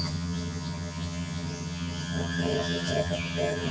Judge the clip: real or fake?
fake